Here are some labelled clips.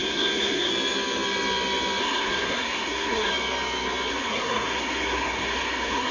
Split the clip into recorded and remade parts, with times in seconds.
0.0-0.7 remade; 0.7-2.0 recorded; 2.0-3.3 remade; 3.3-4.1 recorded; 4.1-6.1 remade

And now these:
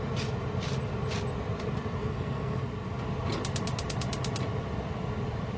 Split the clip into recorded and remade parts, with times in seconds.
0.0-2.0 recorded; 2.0-2.6 remade; 2.6-5.6 recorded

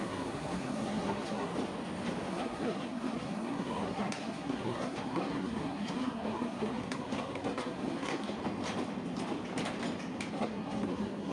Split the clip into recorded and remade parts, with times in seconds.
0.0-1.5 remade; 1.5-2.3 recorded; 2.3-8.4 remade; 8.4-10.3 recorded; 10.3-11.3 remade